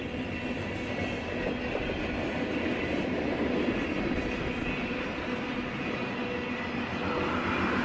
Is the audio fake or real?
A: real